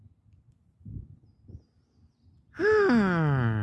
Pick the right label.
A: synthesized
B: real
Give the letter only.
B